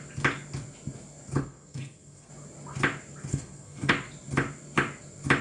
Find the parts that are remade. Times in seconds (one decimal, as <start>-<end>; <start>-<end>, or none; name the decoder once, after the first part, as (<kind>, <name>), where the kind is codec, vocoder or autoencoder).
1.4-2.3 (codec, SNAC); 3.3-3.9